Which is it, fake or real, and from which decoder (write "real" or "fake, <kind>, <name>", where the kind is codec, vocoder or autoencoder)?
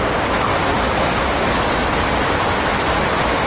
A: real